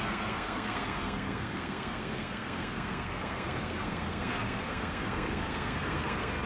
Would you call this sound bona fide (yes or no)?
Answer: no